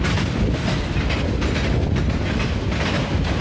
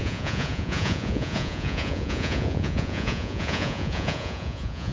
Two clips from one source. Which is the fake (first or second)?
second